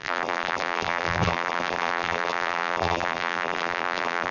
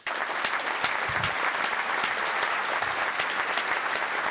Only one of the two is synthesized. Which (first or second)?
first